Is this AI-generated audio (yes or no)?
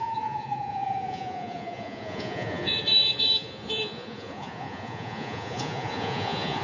yes